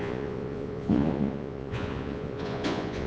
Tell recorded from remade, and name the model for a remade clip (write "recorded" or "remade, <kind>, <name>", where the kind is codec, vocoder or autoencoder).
remade, vocoder, Vocos